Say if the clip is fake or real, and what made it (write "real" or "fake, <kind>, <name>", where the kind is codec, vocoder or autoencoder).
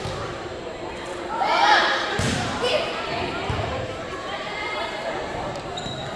fake, vocoder, BigVGAN v2